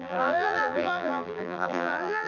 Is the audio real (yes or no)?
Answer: no